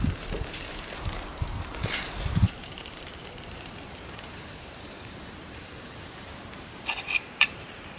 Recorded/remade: remade